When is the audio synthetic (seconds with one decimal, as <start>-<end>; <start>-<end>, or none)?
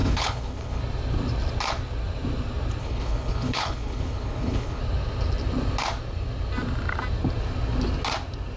0.0-0.8; 2.8-4.8